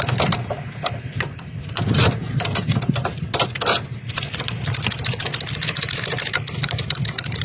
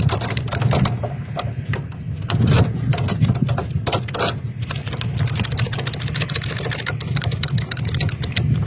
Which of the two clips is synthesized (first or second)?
first